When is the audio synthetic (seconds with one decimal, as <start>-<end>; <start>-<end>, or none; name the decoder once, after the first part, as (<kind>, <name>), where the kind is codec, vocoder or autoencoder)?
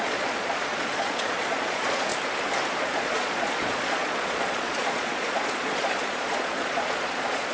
0.0-2.1 (vocoder, Vocos); 2.8-7.5